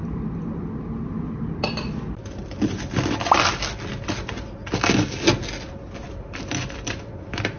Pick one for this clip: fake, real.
real